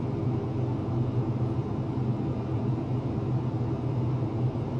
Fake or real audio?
real